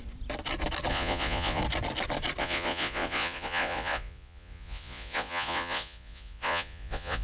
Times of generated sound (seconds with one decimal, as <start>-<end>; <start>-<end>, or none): 0.9-1.6; 2.4-7.2